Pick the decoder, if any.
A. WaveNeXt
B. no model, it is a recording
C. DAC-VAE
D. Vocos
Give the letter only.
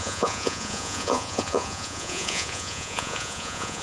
D